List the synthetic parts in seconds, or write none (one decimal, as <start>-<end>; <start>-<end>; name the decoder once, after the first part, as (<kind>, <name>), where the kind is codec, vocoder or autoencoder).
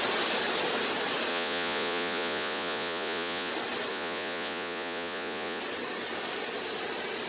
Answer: 1.3-3.5 (vocoder, Vocos); 3.9-5.6